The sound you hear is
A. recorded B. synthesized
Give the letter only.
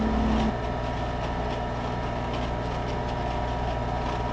A